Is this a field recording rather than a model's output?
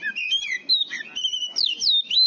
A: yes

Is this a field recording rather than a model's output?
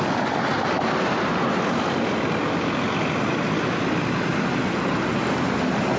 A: yes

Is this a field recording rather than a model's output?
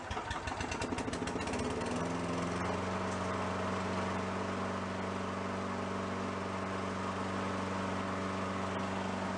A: yes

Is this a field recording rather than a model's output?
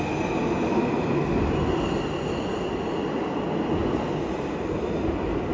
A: yes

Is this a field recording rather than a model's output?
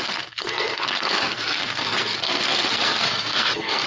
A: no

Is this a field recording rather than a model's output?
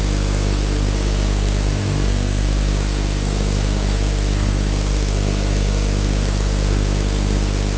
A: no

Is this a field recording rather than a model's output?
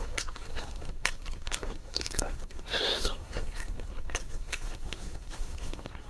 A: no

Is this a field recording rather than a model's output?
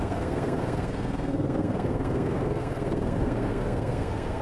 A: no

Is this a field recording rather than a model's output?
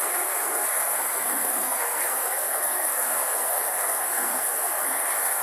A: no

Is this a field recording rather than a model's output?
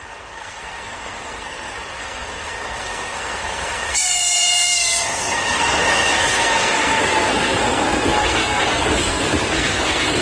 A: no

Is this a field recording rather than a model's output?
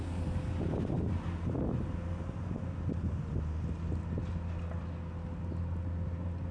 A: yes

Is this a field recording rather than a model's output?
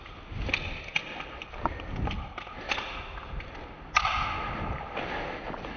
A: yes